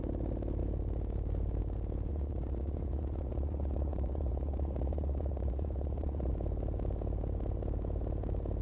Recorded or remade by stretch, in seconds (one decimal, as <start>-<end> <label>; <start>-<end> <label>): 0.0-2.1 recorded; 2.1-6.3 remade; 6.3-8.6 recorded